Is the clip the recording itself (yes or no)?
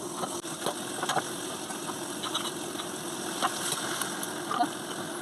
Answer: no